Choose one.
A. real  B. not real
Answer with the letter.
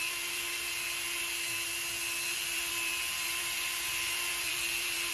B